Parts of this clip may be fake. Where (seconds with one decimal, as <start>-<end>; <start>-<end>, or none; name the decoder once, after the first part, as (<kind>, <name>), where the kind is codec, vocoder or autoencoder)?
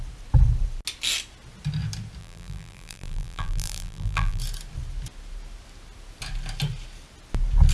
2.2-4.4 (vocoder, BigVGAN v2)